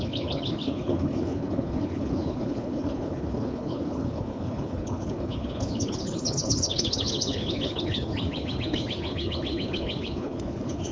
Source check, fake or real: fake